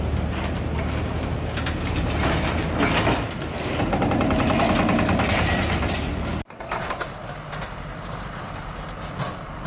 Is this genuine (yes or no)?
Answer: yes